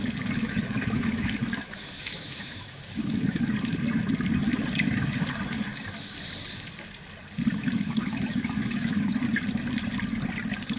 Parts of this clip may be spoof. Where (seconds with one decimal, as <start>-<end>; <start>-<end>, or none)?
0.4-3.4; 7.6-9.1